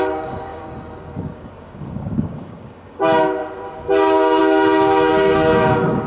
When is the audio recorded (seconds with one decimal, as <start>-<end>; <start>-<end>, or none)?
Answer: 3.4-4.0

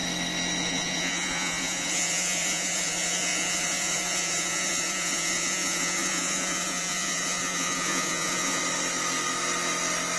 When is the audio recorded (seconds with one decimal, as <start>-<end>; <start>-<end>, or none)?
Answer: 0.0-0.6; 8.6-10.2

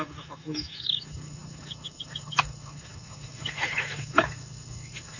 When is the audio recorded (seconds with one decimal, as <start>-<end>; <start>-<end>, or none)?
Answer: none

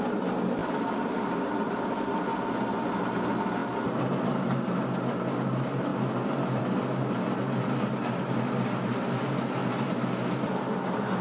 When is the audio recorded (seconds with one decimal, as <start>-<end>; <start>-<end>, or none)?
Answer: 0.0-0.6; 1.7-3.6; 4.4-11.2

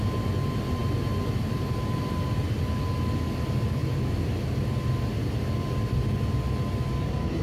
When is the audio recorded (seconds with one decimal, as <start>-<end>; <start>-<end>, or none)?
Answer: 0.0-3.8; 4.6-7.4

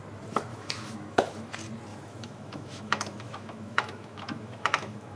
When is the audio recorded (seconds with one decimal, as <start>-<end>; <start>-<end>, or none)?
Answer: 0.0-0.5; 1.5-1.9

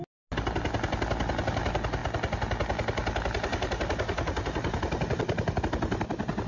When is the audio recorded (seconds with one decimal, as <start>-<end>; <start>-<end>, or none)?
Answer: 0.0-6.5

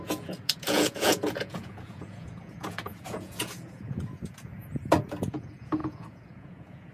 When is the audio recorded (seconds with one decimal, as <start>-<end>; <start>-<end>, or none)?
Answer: none